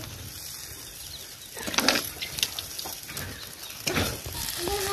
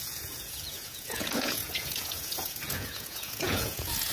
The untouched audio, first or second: first